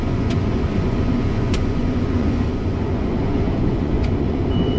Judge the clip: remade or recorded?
remade